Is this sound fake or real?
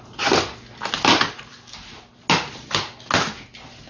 real